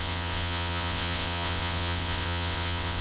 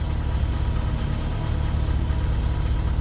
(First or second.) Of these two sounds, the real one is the second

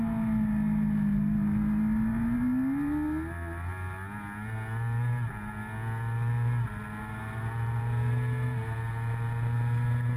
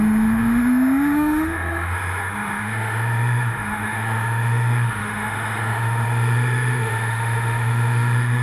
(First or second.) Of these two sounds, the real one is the first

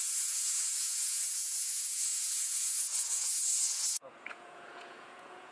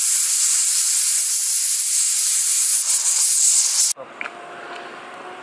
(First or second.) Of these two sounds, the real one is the second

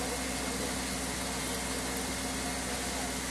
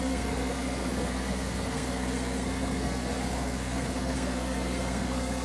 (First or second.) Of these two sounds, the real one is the first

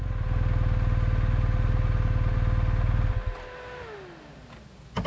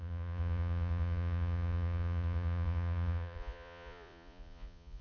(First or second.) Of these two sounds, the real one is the first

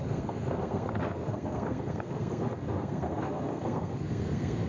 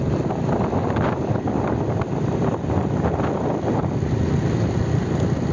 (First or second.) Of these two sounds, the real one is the second